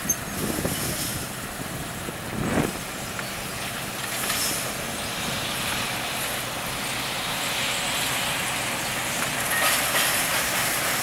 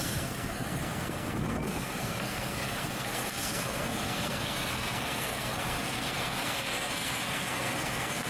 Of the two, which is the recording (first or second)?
first